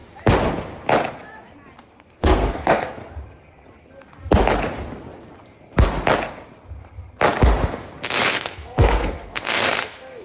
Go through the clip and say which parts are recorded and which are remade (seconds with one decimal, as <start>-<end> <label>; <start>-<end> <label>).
0.0-1.8 recorded; 1.8-3.0 remade; 3.0-8.3 recorded; 8.3-10.2 remade